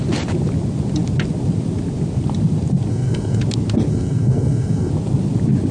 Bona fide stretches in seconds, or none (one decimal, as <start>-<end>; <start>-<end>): 0.0-2.9; 3.4-3.9; 4.9-5.7